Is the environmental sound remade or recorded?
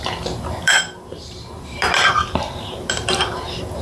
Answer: remade